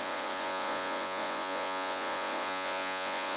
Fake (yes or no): yes